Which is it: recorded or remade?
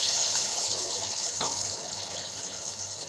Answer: remade